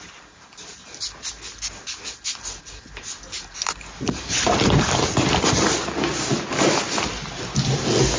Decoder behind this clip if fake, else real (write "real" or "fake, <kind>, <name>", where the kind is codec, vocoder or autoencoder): real